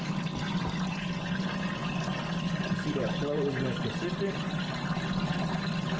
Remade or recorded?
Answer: recorded